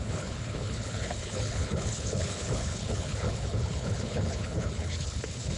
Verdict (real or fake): fake